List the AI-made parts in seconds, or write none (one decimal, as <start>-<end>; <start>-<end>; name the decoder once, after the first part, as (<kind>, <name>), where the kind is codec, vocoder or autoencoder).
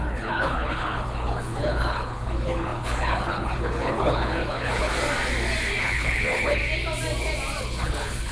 0.0-4.9 (codec, HILCodec); 5.8-6.6; 7.6-8.3